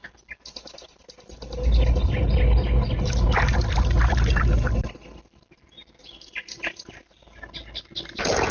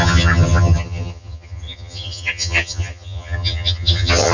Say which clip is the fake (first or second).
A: second